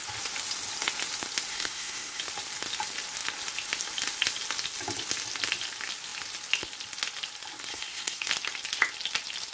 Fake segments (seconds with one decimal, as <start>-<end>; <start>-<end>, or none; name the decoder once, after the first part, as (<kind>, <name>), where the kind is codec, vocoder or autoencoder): 1.5-2.2 (codec, SNAC); 7.7-8.3